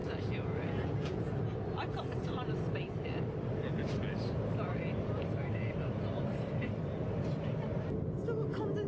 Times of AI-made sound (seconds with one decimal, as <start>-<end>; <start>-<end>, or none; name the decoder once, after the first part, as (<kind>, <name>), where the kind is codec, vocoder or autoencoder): 0.0-1.4 (vocoder, Vocos)